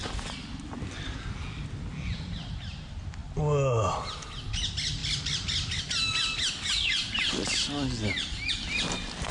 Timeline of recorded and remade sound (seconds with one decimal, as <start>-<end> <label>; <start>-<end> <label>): 0.0-9.3 recorded